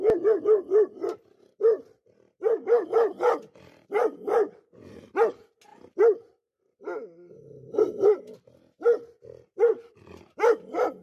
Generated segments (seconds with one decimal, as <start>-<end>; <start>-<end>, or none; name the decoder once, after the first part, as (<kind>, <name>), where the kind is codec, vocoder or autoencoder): none